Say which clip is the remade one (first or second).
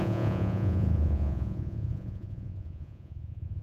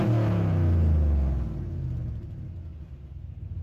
first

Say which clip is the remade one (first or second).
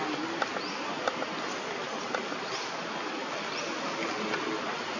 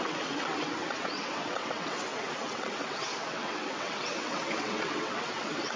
second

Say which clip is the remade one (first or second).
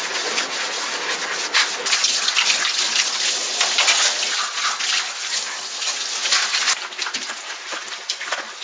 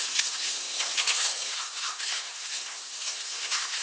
second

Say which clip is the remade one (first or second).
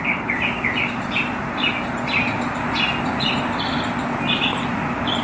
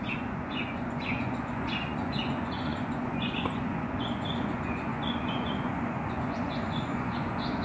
second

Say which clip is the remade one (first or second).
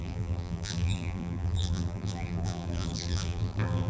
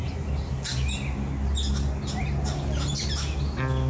first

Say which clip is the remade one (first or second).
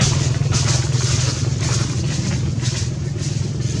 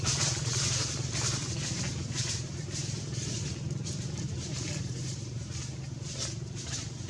second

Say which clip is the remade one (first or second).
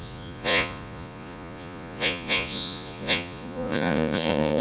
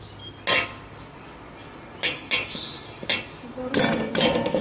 first